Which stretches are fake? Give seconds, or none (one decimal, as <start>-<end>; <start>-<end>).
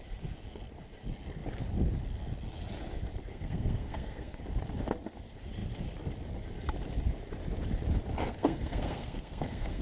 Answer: 3.3-4.4; 8.2-9.8